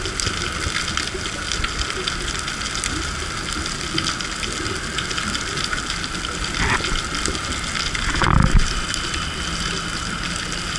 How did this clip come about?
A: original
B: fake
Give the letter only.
A